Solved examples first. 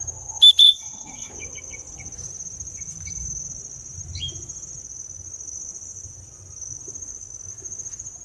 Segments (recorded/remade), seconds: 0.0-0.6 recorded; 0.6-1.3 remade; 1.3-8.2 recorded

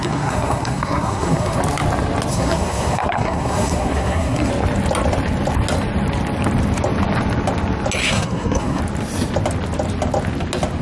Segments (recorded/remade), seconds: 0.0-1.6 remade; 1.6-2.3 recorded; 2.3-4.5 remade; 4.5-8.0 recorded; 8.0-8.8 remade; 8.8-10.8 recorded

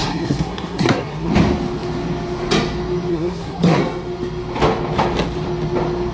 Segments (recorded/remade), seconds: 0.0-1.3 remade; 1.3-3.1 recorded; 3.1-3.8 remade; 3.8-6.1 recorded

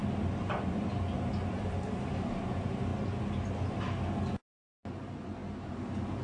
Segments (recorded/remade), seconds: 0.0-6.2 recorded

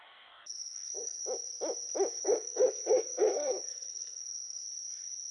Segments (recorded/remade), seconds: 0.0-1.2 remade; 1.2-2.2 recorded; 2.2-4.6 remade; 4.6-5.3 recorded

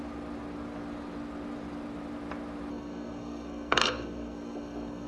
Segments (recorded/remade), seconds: 0.0-2.7 recorded; 2.7-5.1 remade

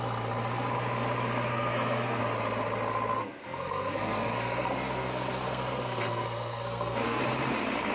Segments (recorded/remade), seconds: 0.0-1.5 recorded; 1.5-2.2 remade; 2.2-3.2 recorded; 3.2-7.2 remade; 7.2-7.9 recorded

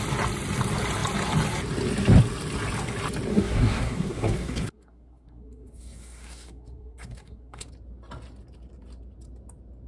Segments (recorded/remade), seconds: 0.0-3.3 recorded; 3.3-7.7 remade; 7.7-9.9 recorded